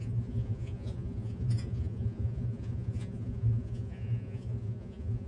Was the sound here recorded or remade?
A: remade